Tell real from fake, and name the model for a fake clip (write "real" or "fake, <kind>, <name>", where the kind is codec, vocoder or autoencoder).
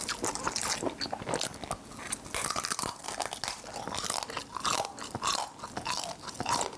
real